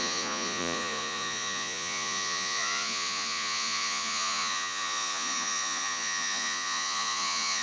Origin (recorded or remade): remade